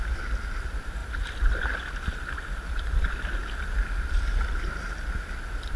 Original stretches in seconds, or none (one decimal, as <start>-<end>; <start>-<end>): 0.0-5.8